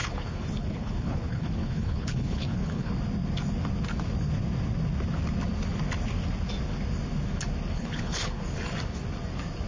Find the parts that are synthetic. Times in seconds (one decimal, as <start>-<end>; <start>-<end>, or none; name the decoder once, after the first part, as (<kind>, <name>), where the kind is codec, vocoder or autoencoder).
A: 0.0-2.9 (codec, HILCodec); 7.7-8.4